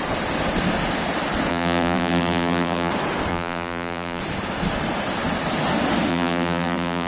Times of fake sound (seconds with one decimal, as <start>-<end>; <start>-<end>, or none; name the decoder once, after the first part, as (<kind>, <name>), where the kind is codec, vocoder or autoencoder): 1.5-2.9 (vocoder, BigVGAN v2); 3.3-4.2; 6.1-7.1